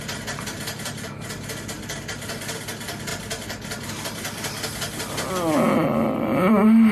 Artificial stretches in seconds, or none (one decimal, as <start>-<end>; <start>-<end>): none